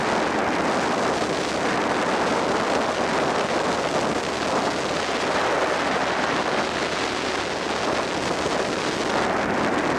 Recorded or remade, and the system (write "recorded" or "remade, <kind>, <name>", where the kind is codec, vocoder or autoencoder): recorded